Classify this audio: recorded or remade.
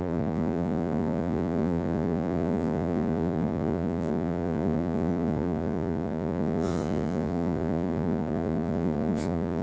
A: remade